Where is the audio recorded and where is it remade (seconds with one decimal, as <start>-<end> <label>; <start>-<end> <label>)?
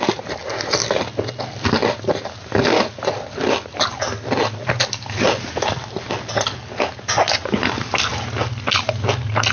0.0-9.5 recorded